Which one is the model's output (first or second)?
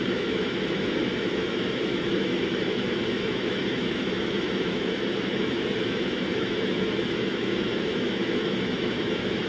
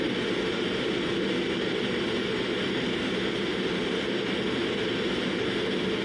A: first